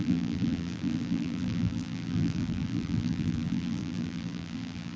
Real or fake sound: fake